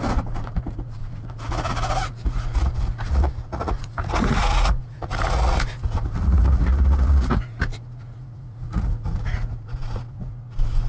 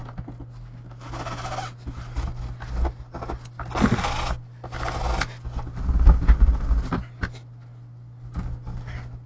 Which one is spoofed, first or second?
first